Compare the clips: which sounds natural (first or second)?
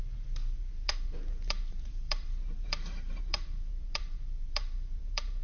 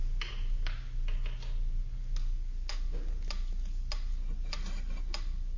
second